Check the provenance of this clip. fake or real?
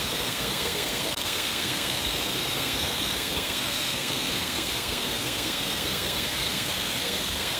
fake